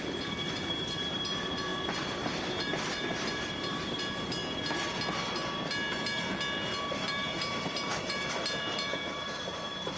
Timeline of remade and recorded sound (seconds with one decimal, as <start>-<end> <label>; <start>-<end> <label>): 0.0-4.4 remade; 4.4-7.1 recorded; 7.1-10.0 remade